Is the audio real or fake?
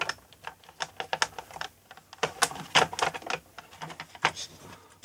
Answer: real